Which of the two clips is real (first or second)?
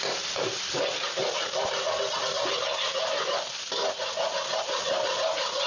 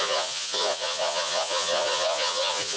first